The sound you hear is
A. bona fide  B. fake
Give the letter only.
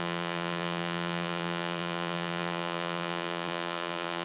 B